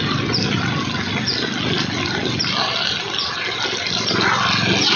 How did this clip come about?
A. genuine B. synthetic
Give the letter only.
A